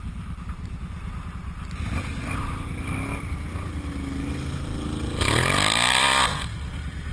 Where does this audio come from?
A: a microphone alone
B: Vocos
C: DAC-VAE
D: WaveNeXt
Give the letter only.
A